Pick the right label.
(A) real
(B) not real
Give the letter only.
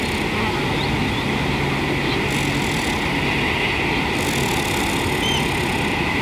A